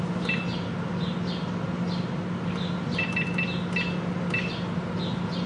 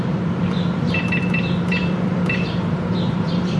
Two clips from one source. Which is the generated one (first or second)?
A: second